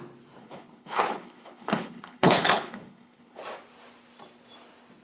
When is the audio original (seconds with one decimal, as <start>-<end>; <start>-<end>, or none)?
0.0-0.4; 3.4-5.0